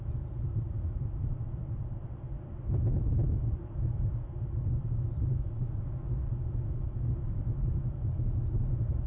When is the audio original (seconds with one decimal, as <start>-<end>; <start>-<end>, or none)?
0.0-1.0; 2.0-9.1